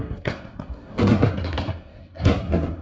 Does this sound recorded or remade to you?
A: remade